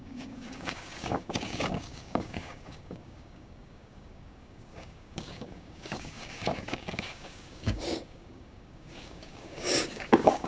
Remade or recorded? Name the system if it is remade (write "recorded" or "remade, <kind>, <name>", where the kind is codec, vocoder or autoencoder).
remade, codec, DAC